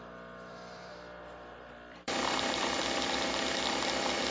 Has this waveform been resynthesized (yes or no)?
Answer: yes